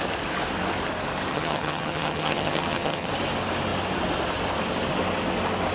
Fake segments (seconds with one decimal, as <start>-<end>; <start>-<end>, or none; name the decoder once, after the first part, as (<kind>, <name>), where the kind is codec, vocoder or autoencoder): 1.3-3.1 (vocoder, HiFi-GAN)